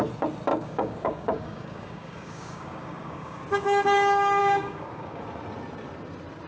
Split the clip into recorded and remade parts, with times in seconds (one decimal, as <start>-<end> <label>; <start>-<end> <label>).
0.0-0.5 recorded; 0.5-3.4 remade; 3.4-4.4 recorded; 4.4-5.2 remade; 5.2-6.5 recorded